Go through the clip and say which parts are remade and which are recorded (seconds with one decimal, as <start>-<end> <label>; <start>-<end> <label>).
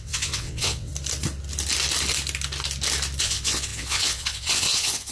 0.0-0.9 remade; 0.9-3.2 recorded; 3.2-5.1 remade